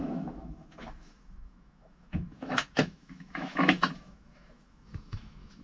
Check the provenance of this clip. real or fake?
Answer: fake